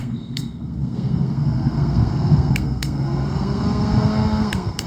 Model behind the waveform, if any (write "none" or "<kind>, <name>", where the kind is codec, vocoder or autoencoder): codec, SNAC